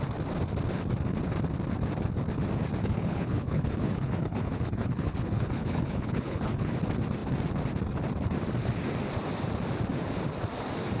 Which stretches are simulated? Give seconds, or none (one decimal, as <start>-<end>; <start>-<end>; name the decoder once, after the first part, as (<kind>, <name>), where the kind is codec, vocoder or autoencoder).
2.8-6.8 (codec, HILCodec)